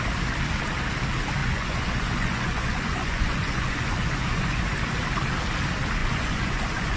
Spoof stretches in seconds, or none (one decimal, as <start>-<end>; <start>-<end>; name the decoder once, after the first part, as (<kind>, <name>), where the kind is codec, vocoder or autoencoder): 1.4-4.6 (vocoder, Vocos); 6.0-7.0